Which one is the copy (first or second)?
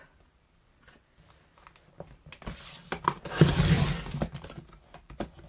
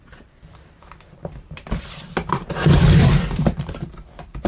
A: second